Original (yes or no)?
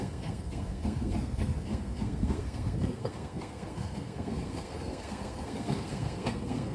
no